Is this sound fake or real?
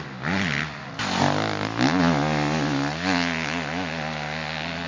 real